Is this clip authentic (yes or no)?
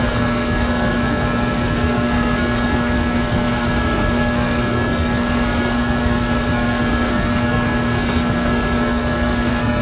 no